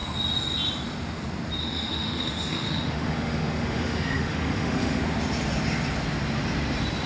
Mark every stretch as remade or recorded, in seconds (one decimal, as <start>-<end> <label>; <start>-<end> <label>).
0.0-1.6 recorded; 1.6-5.0 remade; 5.0-7.1 recorded